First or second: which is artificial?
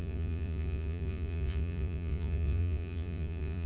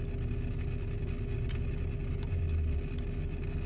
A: first